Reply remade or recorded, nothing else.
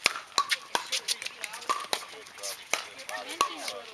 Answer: recorded